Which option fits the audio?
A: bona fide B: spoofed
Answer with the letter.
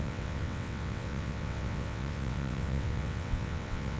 B